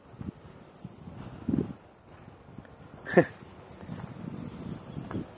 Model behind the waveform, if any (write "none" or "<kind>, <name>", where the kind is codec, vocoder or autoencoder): none